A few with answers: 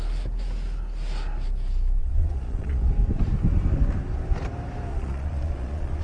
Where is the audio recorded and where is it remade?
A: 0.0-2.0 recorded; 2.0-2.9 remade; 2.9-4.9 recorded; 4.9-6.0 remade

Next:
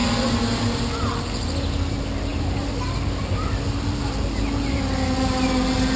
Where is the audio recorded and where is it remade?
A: 0.0-6.0 recorded

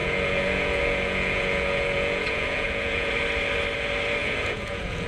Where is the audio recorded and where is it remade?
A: 0.0-3.1 remade; 3.1-4.2 recorded; 4.2-5.1 remade

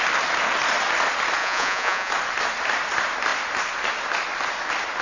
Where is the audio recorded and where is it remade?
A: 0.0-1.4 recorded; 1.4-2.1 remade; 2.1-5.0 recorded

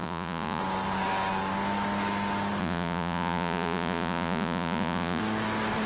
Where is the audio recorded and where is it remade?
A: 0.0-0.6 remade; 0.6-2.6 recorded; 2.6-5.2 remade; 5.2-5.9 recorded